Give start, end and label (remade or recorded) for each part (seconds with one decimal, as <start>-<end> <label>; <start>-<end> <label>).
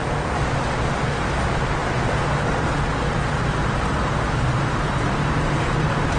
0.0-6.2 recorded